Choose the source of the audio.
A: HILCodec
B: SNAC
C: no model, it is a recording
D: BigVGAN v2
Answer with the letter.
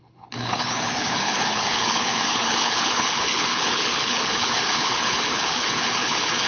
A